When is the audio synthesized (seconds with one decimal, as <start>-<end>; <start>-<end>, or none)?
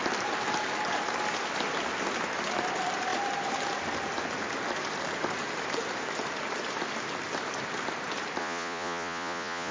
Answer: 8.4-9.7